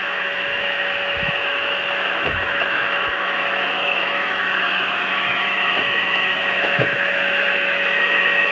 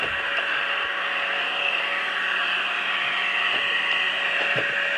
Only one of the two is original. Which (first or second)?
second